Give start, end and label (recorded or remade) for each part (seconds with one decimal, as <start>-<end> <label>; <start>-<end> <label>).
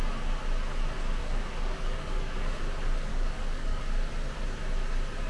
0.0-1.2 recorded; 1.2-2.6 remade; 2.6-3.1 recorded; 3.1-3.8 remade; 3.8-5.3 recorded